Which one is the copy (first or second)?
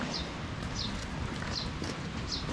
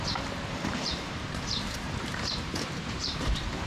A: second